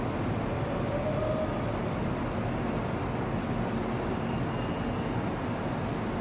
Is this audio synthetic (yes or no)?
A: no